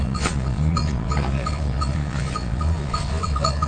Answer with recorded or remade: remade